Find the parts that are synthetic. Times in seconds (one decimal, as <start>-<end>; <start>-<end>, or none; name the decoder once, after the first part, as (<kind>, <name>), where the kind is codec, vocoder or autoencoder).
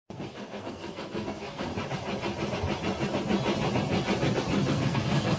0.0-1.7 (codec, SNAC); 4.7-5.4